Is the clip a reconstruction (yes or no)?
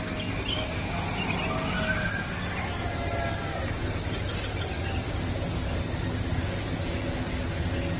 no